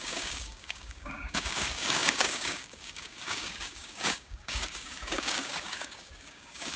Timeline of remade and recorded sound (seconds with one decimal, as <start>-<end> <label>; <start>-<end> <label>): 0.0-6.8 remade

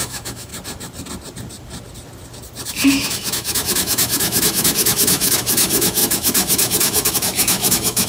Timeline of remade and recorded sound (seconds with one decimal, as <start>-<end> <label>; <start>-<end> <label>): 0.0-0.5 remade; 0.5-2.7 recorded; 2.7-8.1 remade

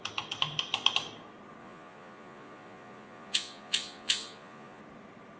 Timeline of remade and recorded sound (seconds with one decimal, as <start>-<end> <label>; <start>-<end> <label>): 0.0-1.6 recorded; 1.6-4.8 remade; 4.8-5.4 recorded